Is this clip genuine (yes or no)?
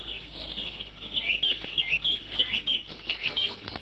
no